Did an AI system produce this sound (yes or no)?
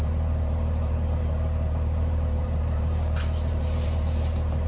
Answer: yes